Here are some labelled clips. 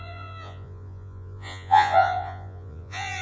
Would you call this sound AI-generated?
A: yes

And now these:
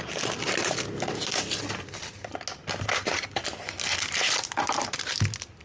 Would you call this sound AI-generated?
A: no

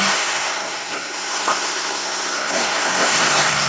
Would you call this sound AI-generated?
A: yes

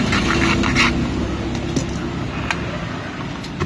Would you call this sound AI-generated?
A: no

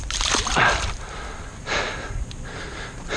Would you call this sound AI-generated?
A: no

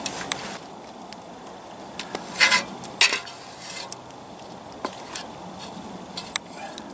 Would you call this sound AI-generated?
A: no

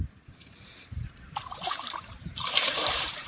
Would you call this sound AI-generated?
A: yes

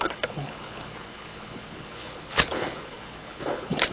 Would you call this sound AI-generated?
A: yes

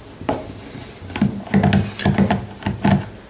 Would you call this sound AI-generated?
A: no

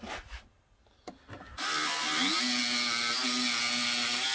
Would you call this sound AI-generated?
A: no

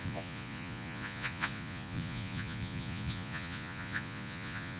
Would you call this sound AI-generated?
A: yes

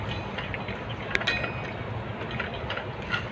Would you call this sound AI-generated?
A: no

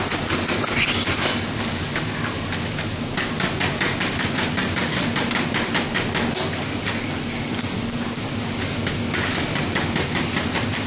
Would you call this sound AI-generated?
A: no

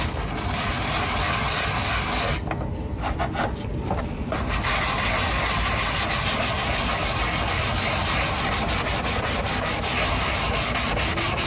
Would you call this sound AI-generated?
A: no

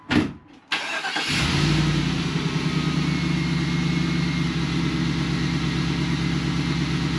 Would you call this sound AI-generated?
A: no